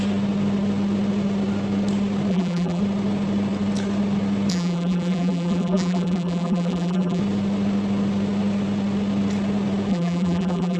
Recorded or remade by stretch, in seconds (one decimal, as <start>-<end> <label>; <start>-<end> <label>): 0.0-2.3 recorded; 2.3-2.8 remade; 2.8-4.5 recorded; 4.5-7.2 remade; 7.2-9.9 recorded; 9.9-10.8 remade